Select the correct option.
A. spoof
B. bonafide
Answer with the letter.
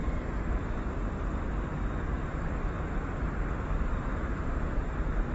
A